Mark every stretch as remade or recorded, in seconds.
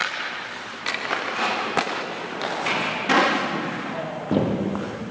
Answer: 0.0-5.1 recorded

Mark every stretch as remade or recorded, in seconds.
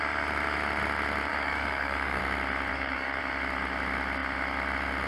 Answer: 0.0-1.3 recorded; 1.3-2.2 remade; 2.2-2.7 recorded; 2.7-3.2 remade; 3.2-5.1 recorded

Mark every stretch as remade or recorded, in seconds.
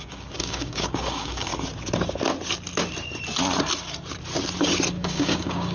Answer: 0.0-1.5 remade; 1.5-4.9 recorded; 4.9-5.7 remade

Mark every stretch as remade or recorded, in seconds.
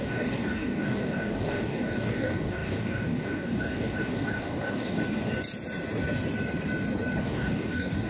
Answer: 0.0-5.0 remade; 5.0-7.2 recorded; 7.2-8.1 remade